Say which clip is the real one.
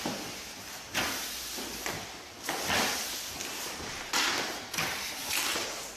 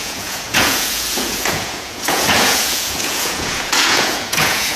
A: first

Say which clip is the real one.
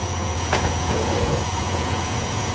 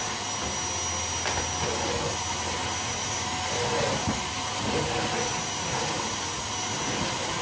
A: second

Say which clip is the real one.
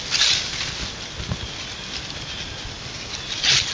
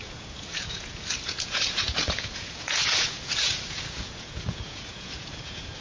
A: first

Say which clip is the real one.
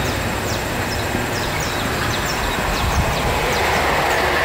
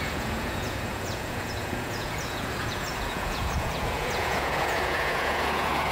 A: first